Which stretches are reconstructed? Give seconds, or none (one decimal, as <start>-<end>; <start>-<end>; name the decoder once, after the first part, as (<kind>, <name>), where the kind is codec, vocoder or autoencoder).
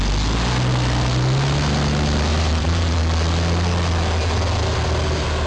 2.3-3.0 (vocoder, BigVGAN v2)